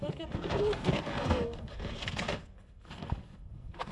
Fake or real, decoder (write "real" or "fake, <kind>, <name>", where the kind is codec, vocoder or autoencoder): fake, codec, SNAC